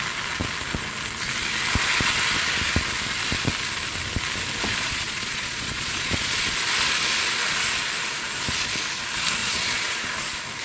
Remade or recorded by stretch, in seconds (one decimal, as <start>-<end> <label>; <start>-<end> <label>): 0.0-4.7 recorded; 4.7-6.5 remade; 6.5-9.4 recorded; 9.4-10.1 remade; 10.1-10.6 recorded